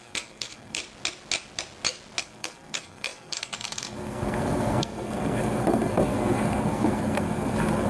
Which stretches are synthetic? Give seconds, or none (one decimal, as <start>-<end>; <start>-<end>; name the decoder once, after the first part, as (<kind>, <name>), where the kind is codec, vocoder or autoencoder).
0.0-0.8 (codec, SNAC); 2.2-7.9